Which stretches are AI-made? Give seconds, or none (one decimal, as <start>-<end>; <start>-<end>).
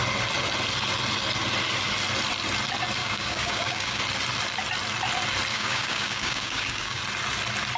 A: 3.0-4.0; 5.5-7.0